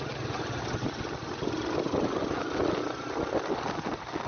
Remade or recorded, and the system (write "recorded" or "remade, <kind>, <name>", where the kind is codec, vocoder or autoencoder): recorded